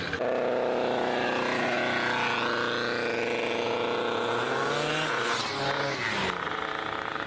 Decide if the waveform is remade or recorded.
recorded